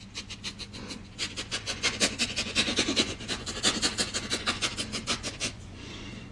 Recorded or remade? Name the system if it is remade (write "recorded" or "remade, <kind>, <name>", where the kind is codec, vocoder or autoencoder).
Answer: remade, vocoder, Vocos